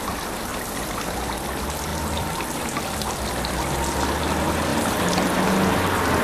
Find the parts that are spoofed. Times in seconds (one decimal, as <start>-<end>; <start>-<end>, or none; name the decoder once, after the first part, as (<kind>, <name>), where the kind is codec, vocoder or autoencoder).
1.9-3.5 (vocoder, BigVGAN v2); 4.7-5.4